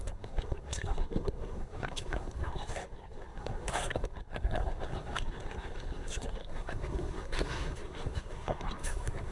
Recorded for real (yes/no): no